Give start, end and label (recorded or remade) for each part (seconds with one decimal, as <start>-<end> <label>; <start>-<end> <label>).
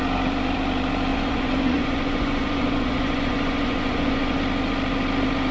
0.0-1.1 recorded; 1.1-4.4 remade; 4.4-5.5 recorded